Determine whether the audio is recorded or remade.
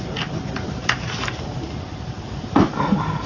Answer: recorded